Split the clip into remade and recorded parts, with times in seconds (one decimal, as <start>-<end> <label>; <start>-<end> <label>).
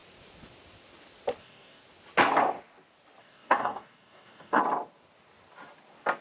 0.0-1.4 recorded; 1.4-1.8 remade; 1.8-3.2 recorded; 3.2-4.6 remade; 4.6-6.2 recorded